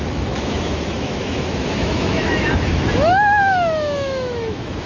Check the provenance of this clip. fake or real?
fake